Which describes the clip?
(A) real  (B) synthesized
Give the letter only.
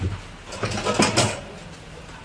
A